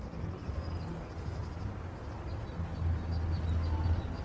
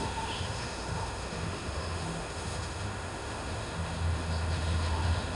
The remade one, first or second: second